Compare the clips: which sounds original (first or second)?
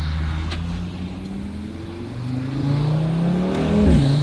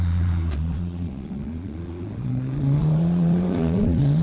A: first